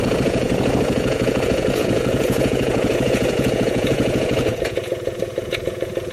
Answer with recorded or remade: remade